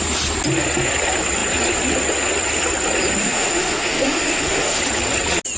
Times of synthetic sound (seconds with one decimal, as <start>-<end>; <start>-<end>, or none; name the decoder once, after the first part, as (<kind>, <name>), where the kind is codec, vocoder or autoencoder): 3.2-4.8 (autoencoder, DAC-VAE)